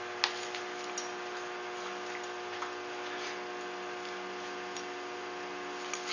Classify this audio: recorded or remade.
recorded